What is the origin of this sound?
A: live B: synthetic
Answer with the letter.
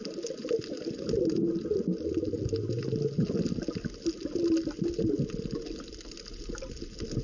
A